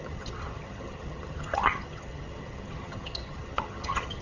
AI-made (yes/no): yes